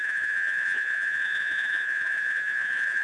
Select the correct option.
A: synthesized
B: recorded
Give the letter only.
A